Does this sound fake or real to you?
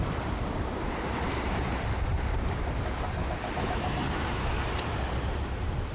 fake